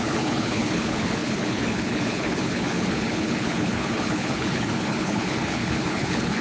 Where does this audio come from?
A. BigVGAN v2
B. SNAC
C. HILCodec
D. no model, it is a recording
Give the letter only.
C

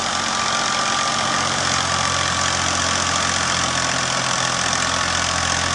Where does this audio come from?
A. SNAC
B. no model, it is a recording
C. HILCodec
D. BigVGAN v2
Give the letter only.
B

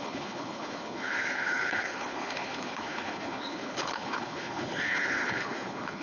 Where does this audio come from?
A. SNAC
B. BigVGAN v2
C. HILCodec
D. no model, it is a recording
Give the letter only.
C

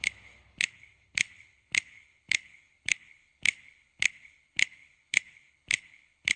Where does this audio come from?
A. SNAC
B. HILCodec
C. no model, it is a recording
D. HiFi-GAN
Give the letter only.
B